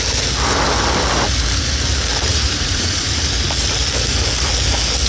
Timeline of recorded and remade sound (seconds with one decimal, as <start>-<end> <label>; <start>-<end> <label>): 0.0-2.3 recorded; 2.3-3.2 remade; 3.2-5.1 recorded